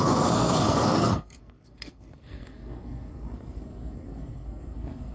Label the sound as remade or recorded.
remade